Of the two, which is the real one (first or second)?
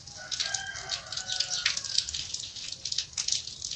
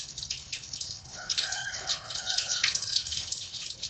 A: first